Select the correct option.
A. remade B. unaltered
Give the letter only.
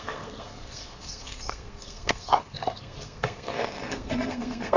A